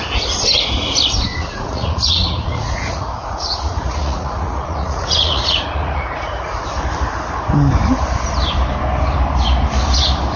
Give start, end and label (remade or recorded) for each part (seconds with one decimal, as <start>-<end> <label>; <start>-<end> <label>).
0.0-1.3 recorded; 1.3-6.6 remade; 6.6-10.4 recorded

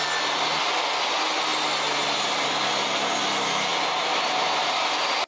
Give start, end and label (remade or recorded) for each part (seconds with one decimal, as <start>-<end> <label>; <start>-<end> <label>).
0.0-5.3 recorded

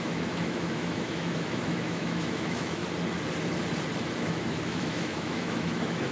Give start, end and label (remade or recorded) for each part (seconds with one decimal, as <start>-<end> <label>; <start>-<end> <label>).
0.0-2.8 remade; 2.8-4.2 recorded; 4.2-6.1 remade

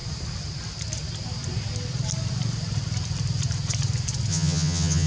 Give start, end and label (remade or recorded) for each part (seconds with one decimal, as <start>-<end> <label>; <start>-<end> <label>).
0.0-4.3 recorded; 4.3-5.1 remade

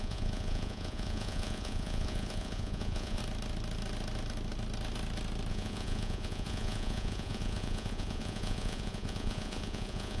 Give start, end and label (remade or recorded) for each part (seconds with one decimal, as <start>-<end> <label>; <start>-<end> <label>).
0.0-3.2 remade; 3.2-5.5 recorded; 5.5-10.2 remade